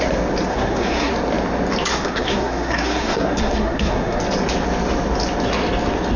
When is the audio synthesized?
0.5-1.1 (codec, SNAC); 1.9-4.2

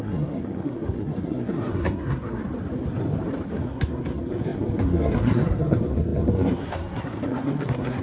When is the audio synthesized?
0.0-2.4 (codec, SNAC); 3.5-8.0

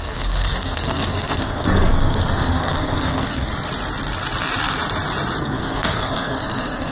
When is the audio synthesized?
0.0-3.5 (codec, SNAC); 5.4-6.9

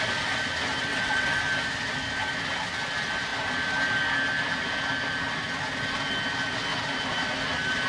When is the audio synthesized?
0.9-1.4 (vocoder, WaveNeXt)

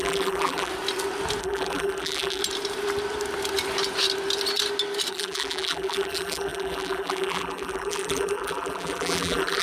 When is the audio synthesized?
0.0-0.7 (vocoder, BigVGAN v2); 1.4-2.4; 5.1-9.6

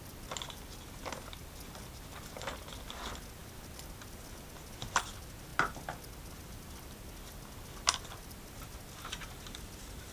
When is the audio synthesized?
none